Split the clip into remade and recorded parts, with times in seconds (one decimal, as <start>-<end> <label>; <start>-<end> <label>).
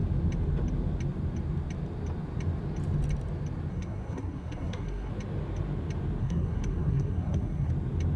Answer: 0.0-3.7 recorded; 3.7-5.1 remade; 5.1-6.2 recorded; 6.2-7.7 remade; 7.7-8.2 recorded